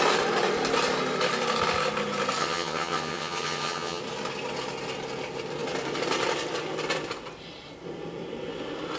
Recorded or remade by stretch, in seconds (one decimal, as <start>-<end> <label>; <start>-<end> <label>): 0.0-2.4 recorded; 2.4-4.0 remade; 4.0-9.0 recorded